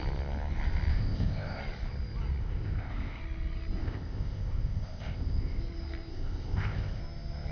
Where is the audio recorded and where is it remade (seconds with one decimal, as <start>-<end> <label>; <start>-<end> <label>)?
0.0-0.9 recorded; 0.9-1.6 remade; 1.6-2.4 recorded; 2.4-3.2 remade; 3.2-3.8 recorded; 3.8-5.6 remade; 5.6-6.1 recorded; 6.1-7.0 remade; 7.0-7.5 recorded